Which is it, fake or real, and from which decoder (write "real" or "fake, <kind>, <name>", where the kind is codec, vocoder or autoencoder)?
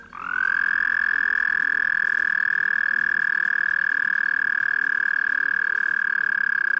real